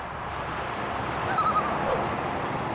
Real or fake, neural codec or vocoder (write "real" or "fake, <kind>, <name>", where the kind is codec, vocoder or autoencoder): real